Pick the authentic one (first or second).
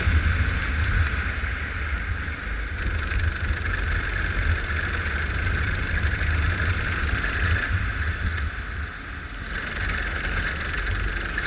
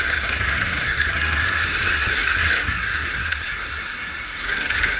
first